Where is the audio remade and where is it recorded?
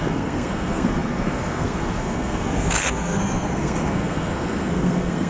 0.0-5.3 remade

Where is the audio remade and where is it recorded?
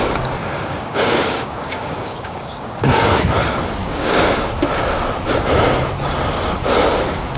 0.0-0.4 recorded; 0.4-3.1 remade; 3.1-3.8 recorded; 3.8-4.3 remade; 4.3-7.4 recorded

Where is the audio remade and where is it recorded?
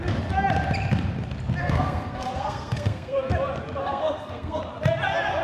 0.0-1.6 recorded; 1.6-3.3 remade; 3.3-3.8 recorded; 3.8-4.6 remade; 4.6-5.4 recorded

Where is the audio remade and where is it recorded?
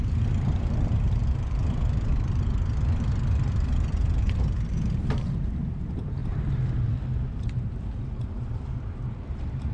0.0-6.2 remade; 6.2-7.3 recorded; 7.3-9.7 remade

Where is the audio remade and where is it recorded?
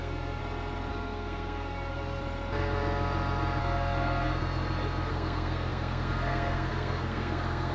0.0-0.4 remade; 0.4-0.9 recorded; 0.9-2.2 remade; 2.2-3.6 recorded; 3.6-4.4 remade; 4.4-5.1 recorded; 5.1-7.7 remade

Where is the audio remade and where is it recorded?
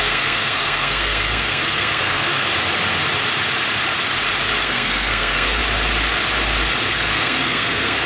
0.0-2.5 remade; 2.5-4.6 recorded; 4.6-5.6 remade; 5.6-6.9 recorded; 6.9-8.1 remade